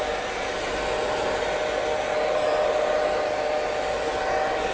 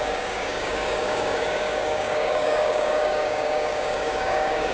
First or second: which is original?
first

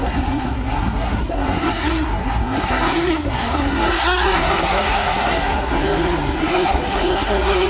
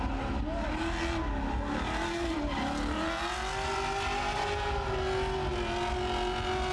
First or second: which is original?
second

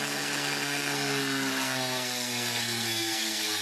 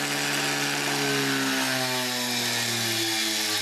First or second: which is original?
second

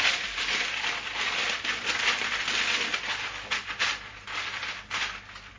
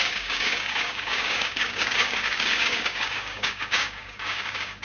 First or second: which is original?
first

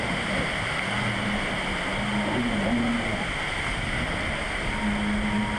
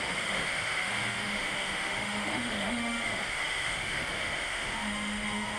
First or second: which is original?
first